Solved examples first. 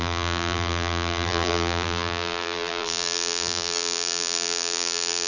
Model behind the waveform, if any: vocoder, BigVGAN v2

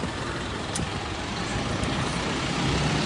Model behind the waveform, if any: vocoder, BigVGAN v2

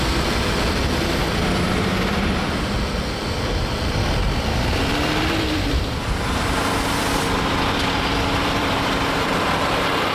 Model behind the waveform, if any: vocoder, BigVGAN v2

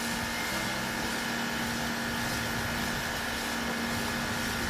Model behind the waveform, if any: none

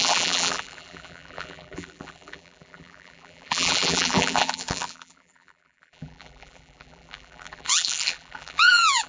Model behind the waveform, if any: vocoder, BigVGAN v2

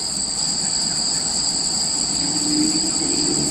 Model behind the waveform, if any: vocoder, BigVGAN v2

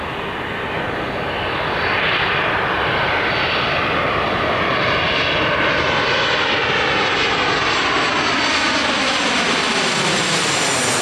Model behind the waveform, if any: none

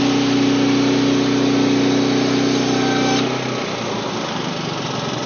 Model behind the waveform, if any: none